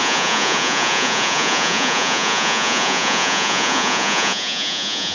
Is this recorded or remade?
remade